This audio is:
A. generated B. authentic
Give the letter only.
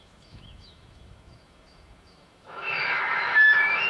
A